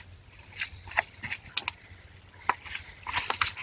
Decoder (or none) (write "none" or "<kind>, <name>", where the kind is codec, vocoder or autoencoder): none